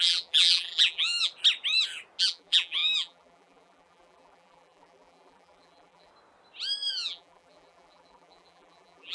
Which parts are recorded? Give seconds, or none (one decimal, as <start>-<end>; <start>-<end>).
1.3-2.2; 6.1-6.9